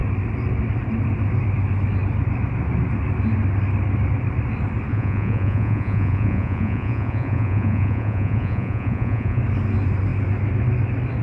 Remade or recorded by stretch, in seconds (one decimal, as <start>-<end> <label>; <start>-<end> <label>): 0.0-4.9 recorded; 4.9-9.4 remade; 9.4-11.2 recorded